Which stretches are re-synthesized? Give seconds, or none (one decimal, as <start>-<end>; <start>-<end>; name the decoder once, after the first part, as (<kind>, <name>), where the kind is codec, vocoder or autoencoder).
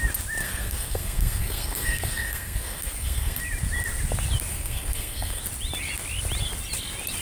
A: 0.4-3.4 (codec, SNAC); 4.5-5.4